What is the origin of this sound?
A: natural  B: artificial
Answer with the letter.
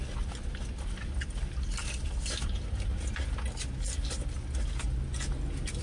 A